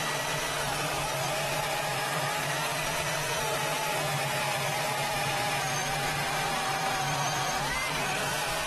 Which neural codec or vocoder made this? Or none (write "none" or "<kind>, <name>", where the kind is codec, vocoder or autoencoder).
vocoder, BigVGAN v2